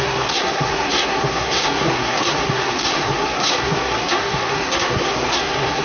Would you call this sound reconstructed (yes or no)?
yes